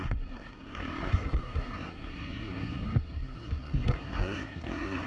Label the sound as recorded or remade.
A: remade